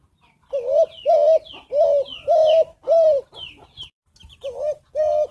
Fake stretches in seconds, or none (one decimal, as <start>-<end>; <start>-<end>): 2.4-5.3